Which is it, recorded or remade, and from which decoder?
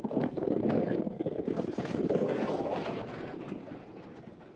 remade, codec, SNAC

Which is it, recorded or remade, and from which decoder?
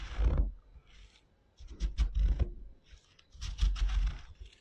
recorded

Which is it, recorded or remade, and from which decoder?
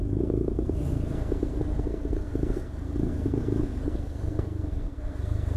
remade, codec, SNAC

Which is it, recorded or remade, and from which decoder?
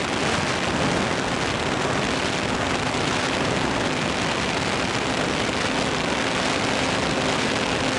recorded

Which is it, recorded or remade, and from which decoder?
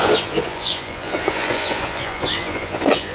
remade, vocoder, Vocos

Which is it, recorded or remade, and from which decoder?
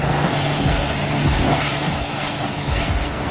remade, codec, SNAC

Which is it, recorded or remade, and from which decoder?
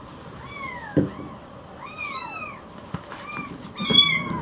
recorded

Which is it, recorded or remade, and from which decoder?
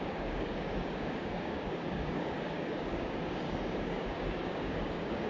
remade, codec, DAC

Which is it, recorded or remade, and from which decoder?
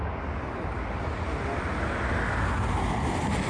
recorded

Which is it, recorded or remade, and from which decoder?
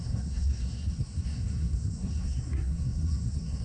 remade, codec, SNAC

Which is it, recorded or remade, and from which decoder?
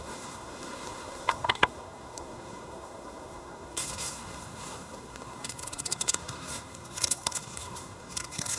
remade, codec, SNAC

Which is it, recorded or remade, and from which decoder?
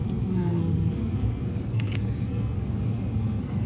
remade, codec, SNAC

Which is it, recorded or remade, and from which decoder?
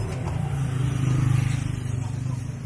recorded